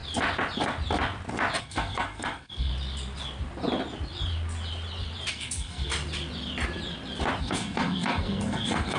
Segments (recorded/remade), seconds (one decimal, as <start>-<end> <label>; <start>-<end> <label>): 0.0-1.6 recorded; 1.6-2.7 remade; 2.7-5.3 recorded; 5.3-5.9 remade; 5.9-7.4 recorded; 7.4-9.0 remade